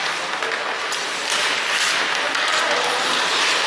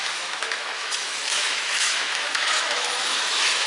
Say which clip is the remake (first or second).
second